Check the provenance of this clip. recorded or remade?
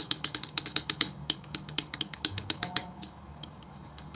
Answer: remade